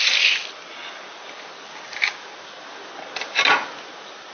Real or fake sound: real